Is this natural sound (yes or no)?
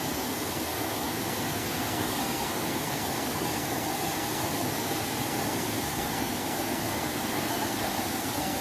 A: no